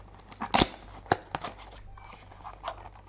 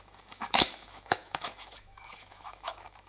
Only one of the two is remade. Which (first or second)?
second